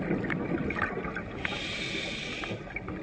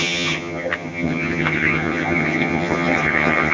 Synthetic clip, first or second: second